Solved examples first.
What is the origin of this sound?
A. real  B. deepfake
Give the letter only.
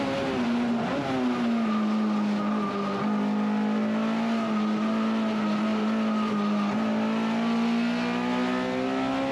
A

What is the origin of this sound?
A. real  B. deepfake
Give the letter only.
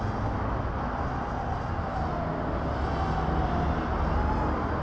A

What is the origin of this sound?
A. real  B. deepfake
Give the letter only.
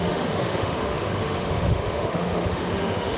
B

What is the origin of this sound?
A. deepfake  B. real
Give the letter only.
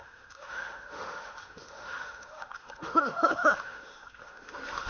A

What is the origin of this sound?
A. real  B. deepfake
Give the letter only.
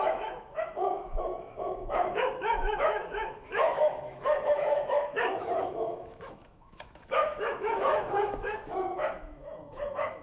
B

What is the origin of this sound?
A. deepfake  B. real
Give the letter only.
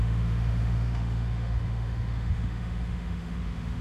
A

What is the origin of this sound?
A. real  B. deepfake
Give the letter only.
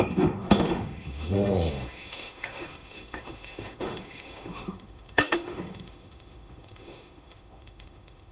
B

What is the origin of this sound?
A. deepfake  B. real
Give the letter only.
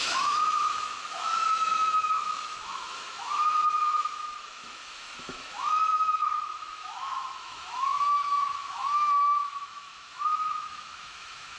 A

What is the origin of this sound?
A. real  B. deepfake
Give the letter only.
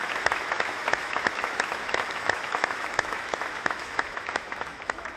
B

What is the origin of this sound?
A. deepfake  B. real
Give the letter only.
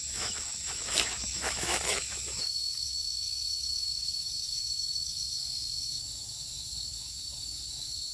A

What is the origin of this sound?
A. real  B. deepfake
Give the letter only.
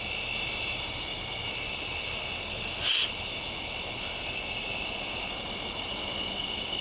A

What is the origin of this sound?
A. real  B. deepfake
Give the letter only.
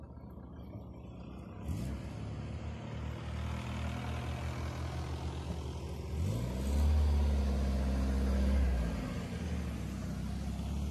A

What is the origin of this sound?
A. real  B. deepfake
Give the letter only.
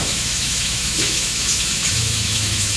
B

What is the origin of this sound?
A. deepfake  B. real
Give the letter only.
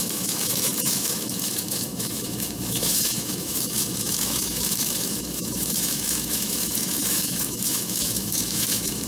A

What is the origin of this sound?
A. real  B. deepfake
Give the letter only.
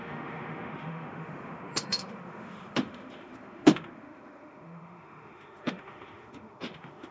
B